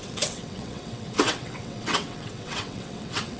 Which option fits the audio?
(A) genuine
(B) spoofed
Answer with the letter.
B